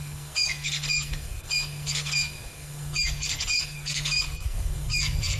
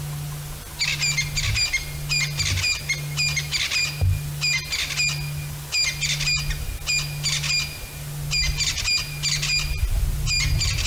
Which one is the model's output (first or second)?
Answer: first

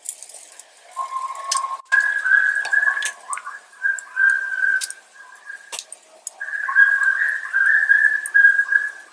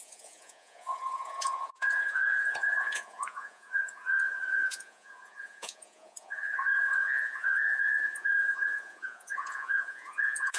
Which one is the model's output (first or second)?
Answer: second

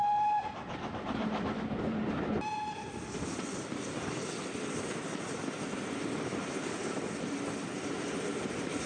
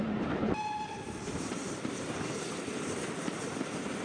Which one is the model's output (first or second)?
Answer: second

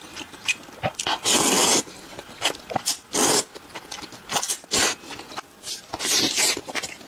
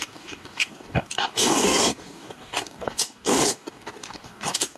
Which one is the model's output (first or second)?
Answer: second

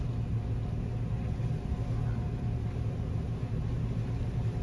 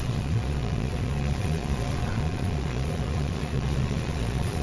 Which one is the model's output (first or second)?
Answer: second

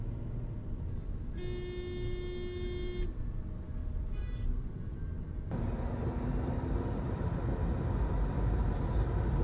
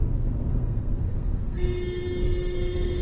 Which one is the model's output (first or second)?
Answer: second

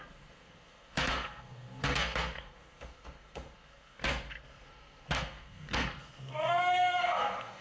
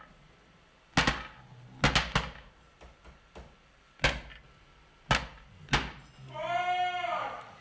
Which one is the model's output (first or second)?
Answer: first